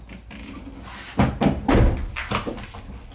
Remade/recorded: recorded